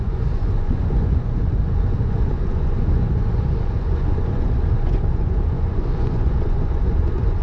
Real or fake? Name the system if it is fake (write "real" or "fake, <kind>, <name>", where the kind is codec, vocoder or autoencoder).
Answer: fake, vocoder, Vocos